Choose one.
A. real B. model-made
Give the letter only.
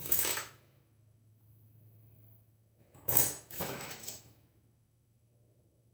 B